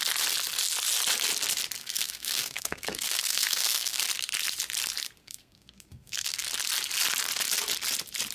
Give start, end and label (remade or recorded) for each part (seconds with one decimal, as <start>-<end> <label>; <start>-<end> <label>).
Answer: 0.0-1.8 recorded; 1.8-4.0 remade; 4.0-5.2 recorded; 5.2-6.5 remade; 6.5-8.3 recorded